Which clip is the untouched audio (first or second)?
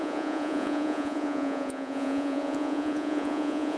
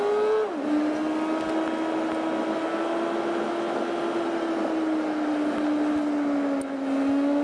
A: second